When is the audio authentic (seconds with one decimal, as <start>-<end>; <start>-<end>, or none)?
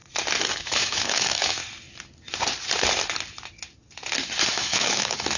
0.0-0.6; 1.6-4.5